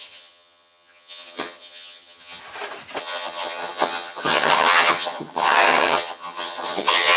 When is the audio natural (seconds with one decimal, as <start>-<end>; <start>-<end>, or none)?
2.4-3.0